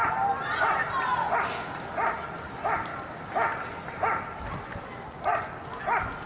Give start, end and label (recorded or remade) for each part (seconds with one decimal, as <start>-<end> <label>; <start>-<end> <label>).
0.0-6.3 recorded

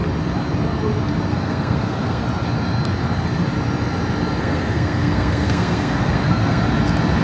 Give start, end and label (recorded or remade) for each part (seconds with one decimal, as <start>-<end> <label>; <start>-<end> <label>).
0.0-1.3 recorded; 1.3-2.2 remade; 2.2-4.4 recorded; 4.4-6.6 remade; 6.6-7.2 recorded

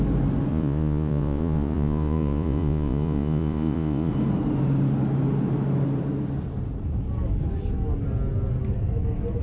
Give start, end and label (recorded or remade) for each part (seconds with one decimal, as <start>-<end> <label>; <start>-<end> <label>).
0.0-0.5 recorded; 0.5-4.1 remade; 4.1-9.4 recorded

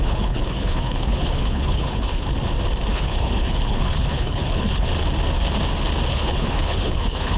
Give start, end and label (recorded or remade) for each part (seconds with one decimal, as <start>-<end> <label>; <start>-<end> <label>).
0.0-2.3 remade; 2.3-2.9 recorded; 2.9-4.9 remade; 4.9-6.1 recorded; 6.1-7.4 remade

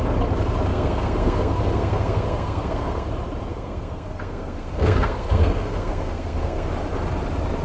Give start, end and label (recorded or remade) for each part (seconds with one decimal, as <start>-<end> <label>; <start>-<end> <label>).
0.0-0.7 recorded; 0.7-3.1 remade; 3.1-3.5 recorded; 3.5-6.7 remade; 6.7-7.6 recorded

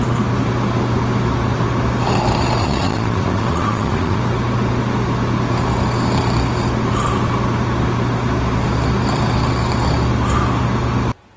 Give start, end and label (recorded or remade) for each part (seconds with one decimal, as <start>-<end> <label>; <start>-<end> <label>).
0.0-2.6 recorded; 2.6-4.2 remade; 4.2-11.4 recorded

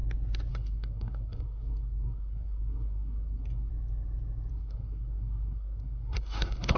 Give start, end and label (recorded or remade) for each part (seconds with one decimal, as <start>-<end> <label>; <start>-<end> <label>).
0.0-0.5 recorded; 0.5-3.7 remade; 3.7-4.5 recorded; 4.5-6.8 remade